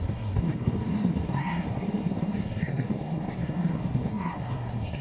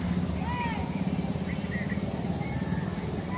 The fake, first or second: first